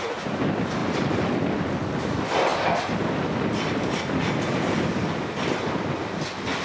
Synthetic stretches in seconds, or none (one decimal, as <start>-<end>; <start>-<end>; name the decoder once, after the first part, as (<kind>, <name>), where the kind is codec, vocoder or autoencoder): none